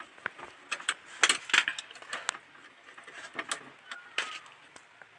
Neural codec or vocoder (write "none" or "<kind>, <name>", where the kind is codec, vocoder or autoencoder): none